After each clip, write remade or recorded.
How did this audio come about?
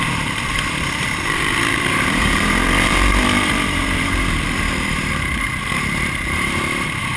remade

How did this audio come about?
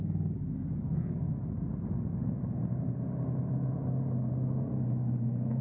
recorded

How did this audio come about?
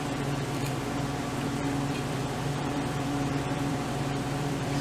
remade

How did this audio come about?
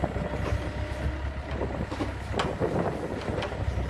recorded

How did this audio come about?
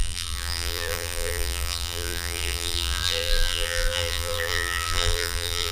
remade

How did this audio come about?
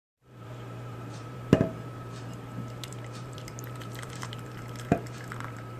remade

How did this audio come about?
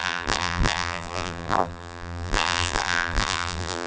remade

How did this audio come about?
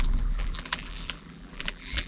remade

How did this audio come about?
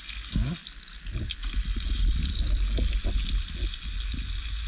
recorded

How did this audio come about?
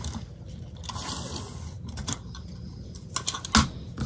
recorded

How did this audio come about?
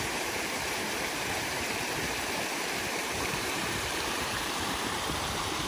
remade